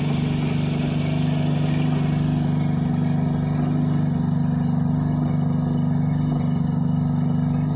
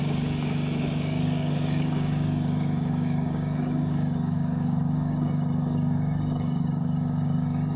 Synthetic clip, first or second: second